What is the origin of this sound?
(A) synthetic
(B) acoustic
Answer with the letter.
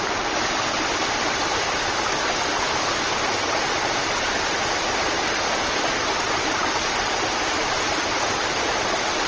A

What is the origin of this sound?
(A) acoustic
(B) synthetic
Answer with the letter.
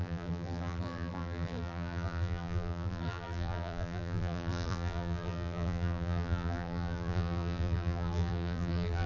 B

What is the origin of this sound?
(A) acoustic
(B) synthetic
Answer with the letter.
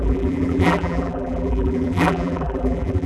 B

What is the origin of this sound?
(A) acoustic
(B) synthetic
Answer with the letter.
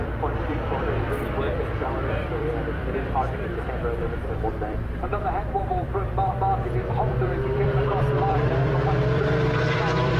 B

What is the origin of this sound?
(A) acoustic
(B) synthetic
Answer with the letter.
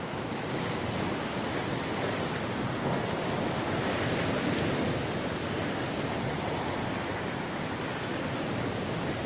A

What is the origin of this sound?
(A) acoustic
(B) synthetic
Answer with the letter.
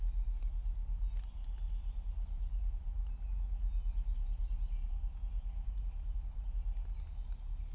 A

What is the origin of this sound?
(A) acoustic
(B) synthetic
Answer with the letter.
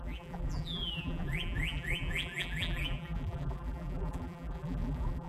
B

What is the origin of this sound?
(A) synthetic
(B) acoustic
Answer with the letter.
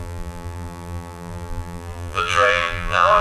A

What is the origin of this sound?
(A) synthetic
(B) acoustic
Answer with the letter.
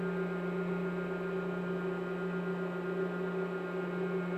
B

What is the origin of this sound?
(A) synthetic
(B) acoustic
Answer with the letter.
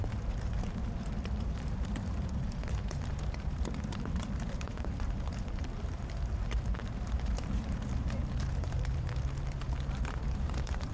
A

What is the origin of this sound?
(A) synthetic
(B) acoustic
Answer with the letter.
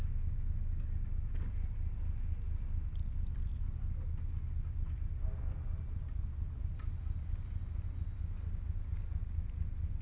B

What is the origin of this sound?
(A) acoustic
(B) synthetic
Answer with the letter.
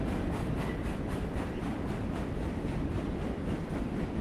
B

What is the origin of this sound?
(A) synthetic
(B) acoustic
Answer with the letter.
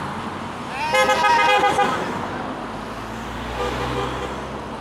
B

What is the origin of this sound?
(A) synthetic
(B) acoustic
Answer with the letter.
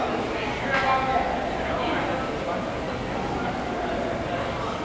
B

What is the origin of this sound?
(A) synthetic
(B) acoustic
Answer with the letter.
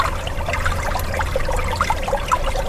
B